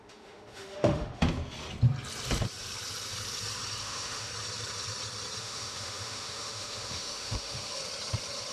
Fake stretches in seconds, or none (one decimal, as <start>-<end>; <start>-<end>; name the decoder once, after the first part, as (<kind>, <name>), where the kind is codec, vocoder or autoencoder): 0.0-1.2 (autoencoder, DAC-VAE); 3.8-4.3; 5.4-7.8